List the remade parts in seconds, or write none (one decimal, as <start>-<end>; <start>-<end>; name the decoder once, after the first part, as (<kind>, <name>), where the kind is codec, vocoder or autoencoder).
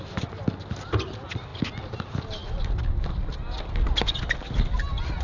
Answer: none